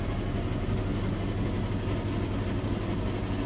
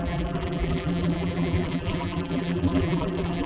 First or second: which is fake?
second